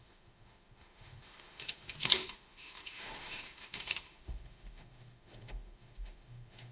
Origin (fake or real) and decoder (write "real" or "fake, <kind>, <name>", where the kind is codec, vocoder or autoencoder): fake, autoencoder, DAC-VAE